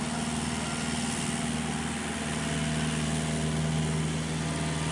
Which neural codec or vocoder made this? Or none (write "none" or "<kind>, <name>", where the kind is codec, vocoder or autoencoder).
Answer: none